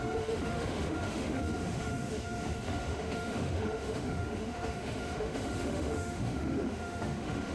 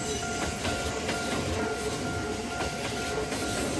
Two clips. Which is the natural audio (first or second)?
second